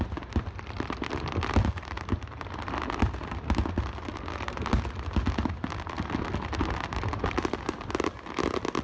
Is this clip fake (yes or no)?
no